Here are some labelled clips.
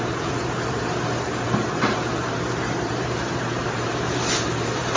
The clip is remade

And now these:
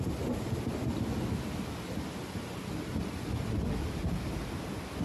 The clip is recorded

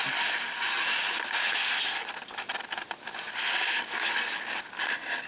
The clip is recorded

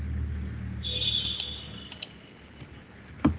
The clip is recorded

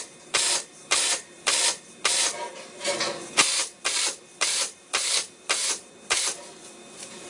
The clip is remade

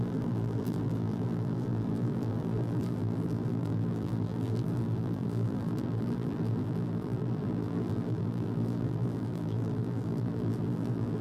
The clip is remade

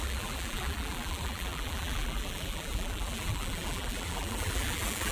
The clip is remade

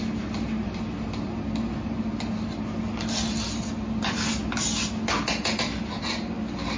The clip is recorded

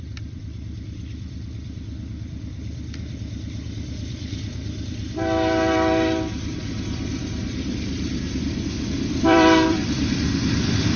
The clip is remade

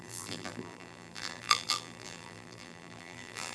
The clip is remade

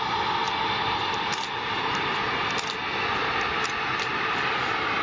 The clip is remade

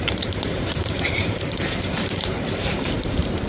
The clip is remade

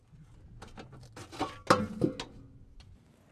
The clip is recorded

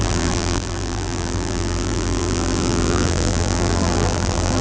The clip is remade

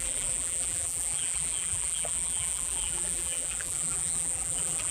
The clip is remade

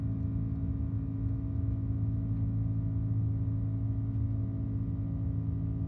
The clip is recorded